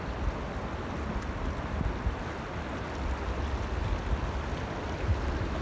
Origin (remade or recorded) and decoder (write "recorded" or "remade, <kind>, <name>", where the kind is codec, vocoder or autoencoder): recorded